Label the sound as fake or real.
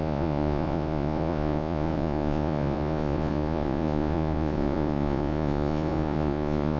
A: fake